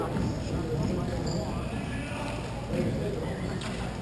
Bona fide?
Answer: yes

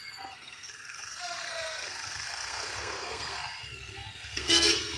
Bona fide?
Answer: no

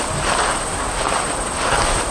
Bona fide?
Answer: yes